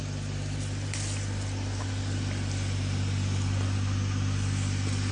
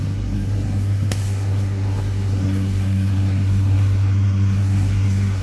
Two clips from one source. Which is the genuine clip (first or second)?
first